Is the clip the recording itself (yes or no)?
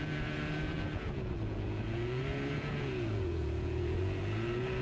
no